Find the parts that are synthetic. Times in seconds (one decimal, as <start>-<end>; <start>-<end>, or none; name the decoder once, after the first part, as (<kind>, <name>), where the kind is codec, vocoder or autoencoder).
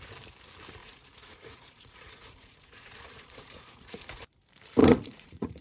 0.8-4.2 (vocoder, Vocos); 4.8-5.6